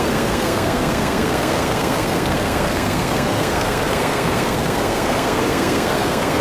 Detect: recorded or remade remade